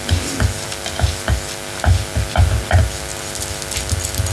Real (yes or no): yes